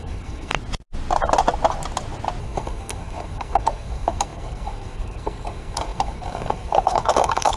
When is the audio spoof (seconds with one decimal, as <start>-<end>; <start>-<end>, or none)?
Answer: 0.0-0.5; 2.4-7.6